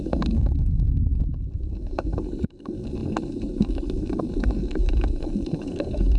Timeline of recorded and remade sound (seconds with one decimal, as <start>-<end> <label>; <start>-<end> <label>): 0.0-1.2 remade; 1.2-1.7 recorded; 1.7-6.2 remade